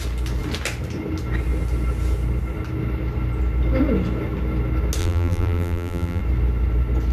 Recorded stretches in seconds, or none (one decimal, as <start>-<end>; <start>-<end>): 0.0-5.0; 6.2-7.1